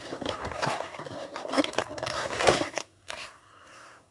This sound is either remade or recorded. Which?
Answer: remade